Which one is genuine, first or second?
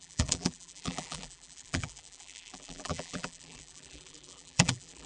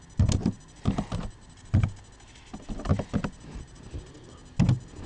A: second